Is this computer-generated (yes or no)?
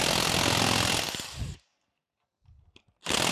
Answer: no